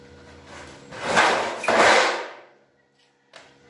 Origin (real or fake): real